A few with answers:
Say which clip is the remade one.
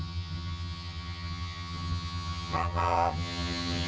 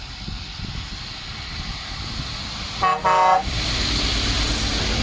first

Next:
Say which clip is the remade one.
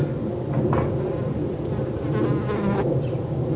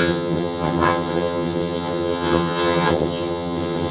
second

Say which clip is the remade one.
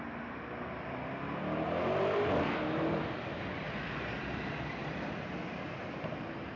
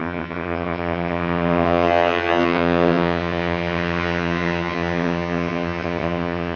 second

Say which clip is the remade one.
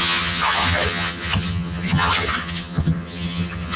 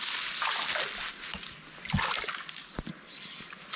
first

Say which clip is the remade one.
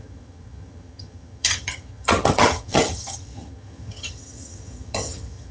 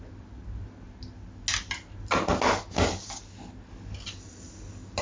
first